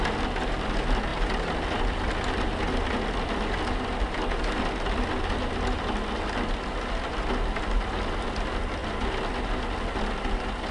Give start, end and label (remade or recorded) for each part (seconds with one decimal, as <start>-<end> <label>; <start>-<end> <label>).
0.0-10.7 recorded